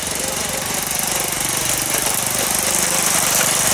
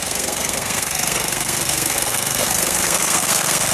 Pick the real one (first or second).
first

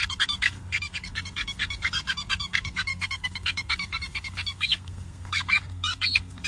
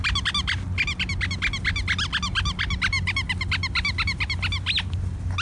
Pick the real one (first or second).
second